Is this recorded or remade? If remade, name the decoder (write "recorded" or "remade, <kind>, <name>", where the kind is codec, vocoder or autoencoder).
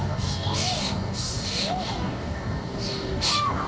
remade, codec, DAC